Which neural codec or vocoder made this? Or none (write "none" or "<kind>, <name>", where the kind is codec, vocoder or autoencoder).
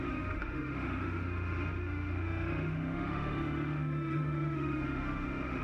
autoencoder, DAC-VAE